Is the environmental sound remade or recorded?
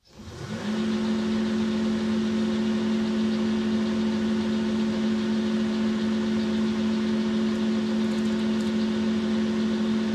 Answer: recorded